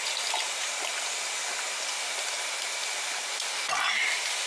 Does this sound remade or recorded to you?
recorded